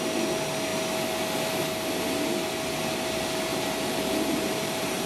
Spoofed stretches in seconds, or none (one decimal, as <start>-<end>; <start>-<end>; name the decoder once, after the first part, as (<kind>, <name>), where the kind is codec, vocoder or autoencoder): 3.5-5.1 (vocoder, BigVGAN v2)